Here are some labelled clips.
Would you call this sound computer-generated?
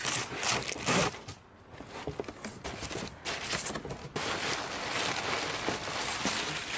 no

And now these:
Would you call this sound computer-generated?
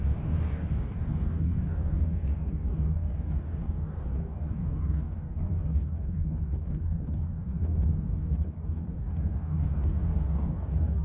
yes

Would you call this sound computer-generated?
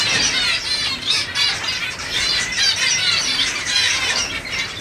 yes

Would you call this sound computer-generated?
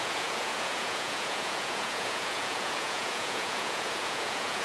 yes